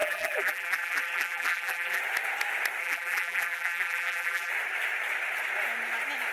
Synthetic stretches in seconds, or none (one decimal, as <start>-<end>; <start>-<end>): 0.0-2.0; 2.8-4.5